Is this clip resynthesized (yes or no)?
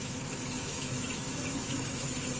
yes